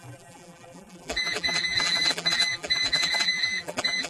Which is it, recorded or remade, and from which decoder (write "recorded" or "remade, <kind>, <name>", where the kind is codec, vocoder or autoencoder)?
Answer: remade, vocoder, BigVGAN v2